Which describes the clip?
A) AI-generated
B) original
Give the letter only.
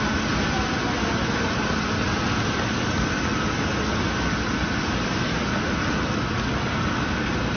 B